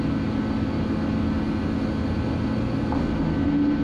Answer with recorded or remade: recorded